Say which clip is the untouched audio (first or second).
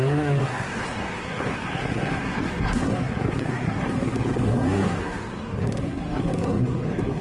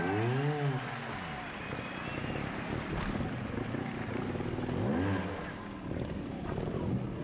second